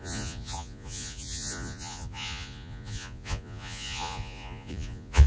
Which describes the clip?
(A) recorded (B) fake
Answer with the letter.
B